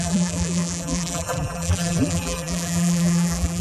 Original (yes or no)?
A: no